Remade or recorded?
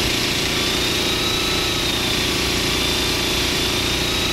remade